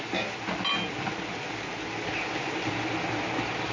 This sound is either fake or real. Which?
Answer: real